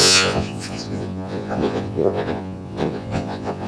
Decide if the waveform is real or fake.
fake